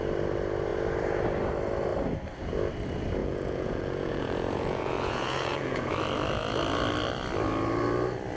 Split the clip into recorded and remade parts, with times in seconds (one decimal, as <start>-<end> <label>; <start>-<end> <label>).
0.0-3.2 recorded; 3.2-5.9 remade; 5.9-8.4 recorded